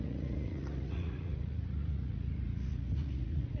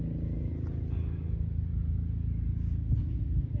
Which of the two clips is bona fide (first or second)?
second